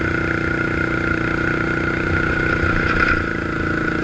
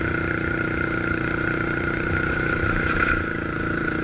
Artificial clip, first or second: second